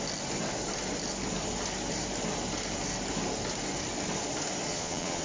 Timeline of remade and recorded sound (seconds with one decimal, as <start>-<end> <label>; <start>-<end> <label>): 0.0-4.7 recorded; 4.7-5.2 remade